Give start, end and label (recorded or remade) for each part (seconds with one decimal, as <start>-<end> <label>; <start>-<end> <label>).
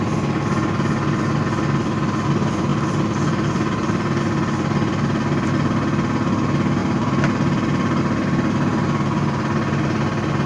0.0-2.7 recorded; 2.7-4.2 remade; 4.2-6.8 recorded; 6.8-8.0 remade; 8.0-10.5 recorded